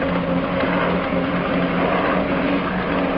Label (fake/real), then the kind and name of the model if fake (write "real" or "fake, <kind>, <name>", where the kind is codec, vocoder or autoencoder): real